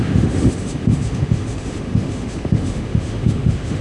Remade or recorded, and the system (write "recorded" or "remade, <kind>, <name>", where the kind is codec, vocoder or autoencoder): remade, autoencoder, DAC-VAE